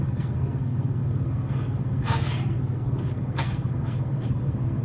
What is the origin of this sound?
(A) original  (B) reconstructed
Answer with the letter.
B